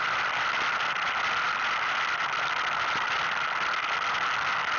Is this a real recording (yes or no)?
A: yes